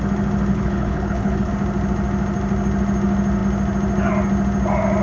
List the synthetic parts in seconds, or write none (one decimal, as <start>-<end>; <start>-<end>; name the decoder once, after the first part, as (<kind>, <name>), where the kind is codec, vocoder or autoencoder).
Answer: 0.5-1.5 (codec, HILCodec)